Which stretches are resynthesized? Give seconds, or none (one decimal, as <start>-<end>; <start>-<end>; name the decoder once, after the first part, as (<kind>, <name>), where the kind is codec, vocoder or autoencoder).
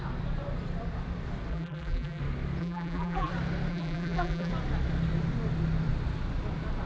1.5-2.2 (vocoder, BigVGAN v2); 2.6-3.3; 3.7-4.5